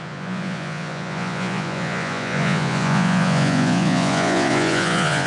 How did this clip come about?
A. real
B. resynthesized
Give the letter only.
B